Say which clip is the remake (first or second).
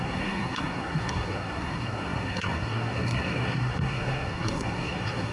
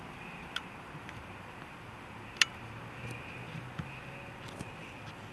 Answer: first